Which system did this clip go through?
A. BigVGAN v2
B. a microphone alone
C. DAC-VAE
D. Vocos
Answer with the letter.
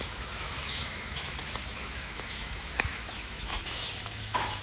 C